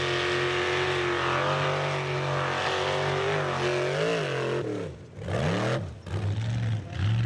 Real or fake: real